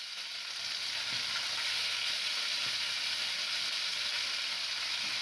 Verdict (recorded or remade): recorded